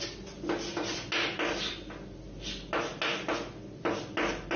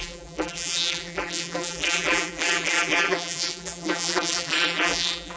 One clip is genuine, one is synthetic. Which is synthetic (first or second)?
second